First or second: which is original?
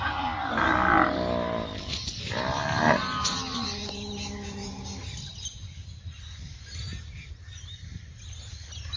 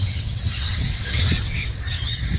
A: first